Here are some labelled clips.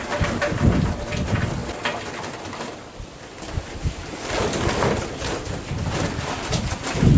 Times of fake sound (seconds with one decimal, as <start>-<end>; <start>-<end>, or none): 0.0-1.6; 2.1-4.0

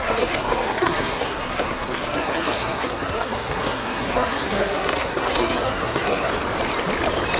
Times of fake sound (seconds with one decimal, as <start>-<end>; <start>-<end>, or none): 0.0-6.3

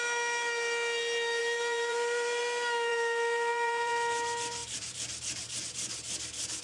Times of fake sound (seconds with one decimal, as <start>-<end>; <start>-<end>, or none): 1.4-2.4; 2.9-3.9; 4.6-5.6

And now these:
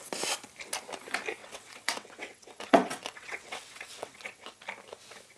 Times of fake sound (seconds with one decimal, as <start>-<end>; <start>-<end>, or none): 1.4-4.6

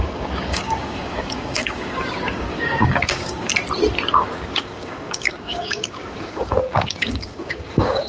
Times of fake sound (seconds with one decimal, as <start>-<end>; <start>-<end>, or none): 0.0-3.5; 4.1-8.1

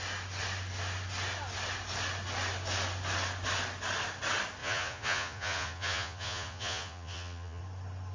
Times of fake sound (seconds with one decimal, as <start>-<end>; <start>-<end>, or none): 4.6-7.6

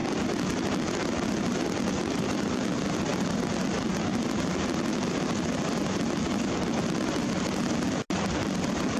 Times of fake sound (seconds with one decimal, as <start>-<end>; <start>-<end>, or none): none